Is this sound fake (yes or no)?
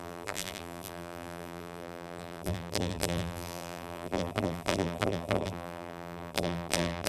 yes